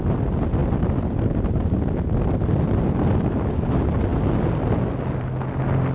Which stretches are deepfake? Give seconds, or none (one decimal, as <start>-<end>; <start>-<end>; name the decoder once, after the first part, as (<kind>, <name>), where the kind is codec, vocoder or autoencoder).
none